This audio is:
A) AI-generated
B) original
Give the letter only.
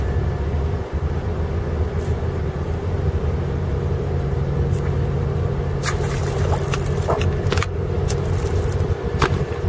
B